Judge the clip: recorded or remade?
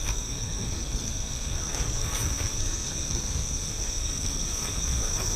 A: remade